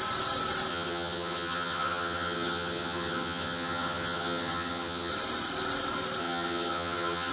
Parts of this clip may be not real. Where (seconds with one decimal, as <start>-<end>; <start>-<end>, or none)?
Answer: 0.7-5.1; 6.2-7.3